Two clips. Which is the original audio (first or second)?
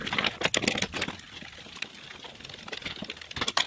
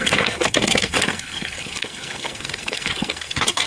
first